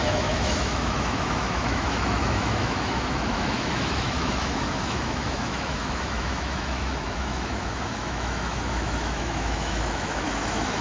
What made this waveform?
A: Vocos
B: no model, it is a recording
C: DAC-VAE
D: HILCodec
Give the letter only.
C